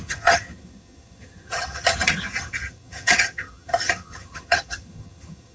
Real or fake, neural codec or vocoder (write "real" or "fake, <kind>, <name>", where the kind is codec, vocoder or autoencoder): fake, vocoder, HiFi-GAN